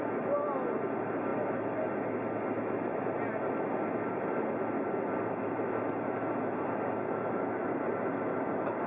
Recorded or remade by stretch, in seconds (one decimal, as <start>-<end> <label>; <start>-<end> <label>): 0.0-8.9 recorded